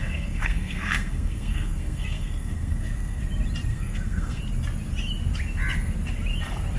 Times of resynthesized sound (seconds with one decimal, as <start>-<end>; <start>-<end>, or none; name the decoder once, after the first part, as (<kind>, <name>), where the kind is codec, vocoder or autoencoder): 0.0-3.2 (codec, SNAC); 3.7-4.4